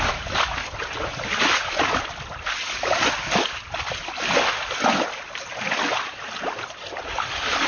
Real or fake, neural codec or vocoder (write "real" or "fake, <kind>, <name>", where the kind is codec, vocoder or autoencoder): real